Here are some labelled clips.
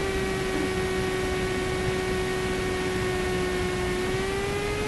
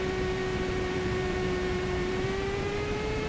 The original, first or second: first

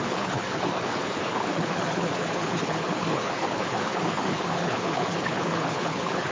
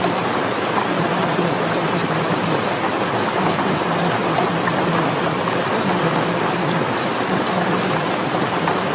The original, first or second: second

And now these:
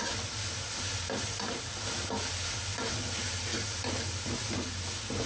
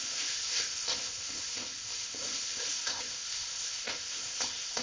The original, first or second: first